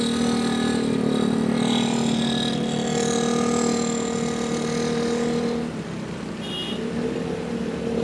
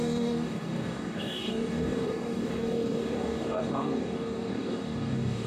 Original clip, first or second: first